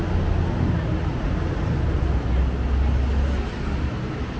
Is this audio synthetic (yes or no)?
no